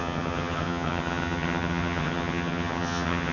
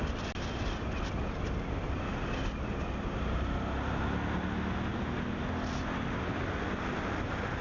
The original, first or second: second